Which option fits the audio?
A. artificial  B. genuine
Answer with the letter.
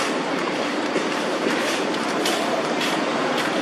A